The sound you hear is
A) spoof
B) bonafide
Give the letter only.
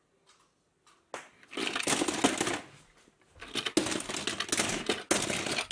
B